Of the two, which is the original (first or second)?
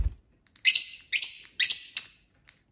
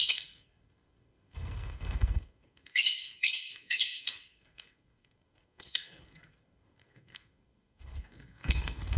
first